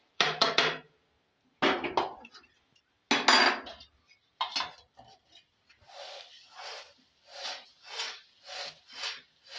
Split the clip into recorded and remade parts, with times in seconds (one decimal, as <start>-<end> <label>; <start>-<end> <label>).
0.0-0.9 remade; 0.9-7.3 recorded; 7.3-7.9 remade; 7.9-9.6 recorded